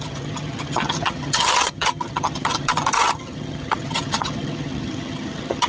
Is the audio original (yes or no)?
no